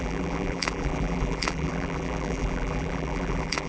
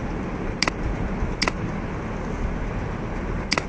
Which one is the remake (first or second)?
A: first